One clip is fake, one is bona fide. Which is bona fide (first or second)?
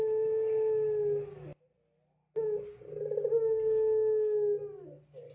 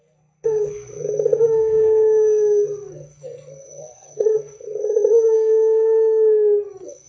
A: first